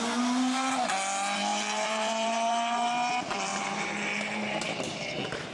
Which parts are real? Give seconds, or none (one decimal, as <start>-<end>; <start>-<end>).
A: 0.0-1.5; 2.9-3.5